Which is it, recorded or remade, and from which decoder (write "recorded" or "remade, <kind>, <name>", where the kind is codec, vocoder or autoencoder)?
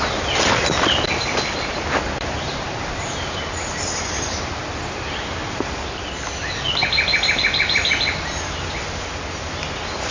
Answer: recorded